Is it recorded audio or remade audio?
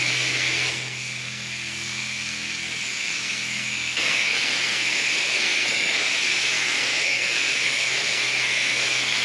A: remade